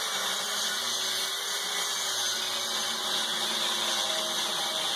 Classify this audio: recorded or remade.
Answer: recorded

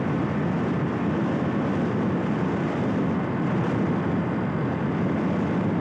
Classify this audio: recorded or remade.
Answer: recorded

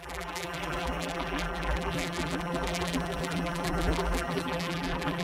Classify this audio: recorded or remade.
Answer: remade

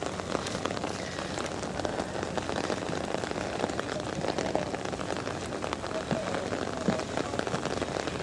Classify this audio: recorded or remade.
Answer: recorded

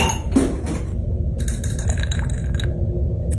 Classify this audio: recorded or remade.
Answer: recorded